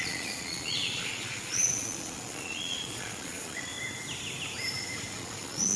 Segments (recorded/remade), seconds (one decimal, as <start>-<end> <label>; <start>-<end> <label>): 0.0-3.7 remade; 3.7-5.1 recorded; 5.1-5.8 remade